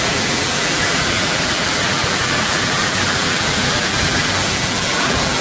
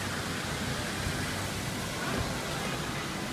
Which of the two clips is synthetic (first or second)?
first